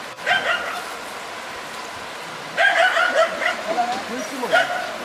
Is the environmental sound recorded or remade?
recorded